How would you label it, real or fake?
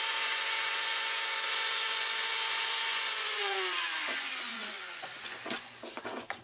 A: fake